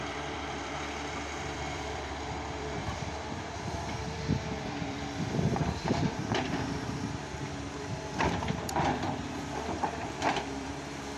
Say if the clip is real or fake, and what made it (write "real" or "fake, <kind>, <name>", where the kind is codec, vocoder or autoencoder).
fake, vocoder, BigVGAN v2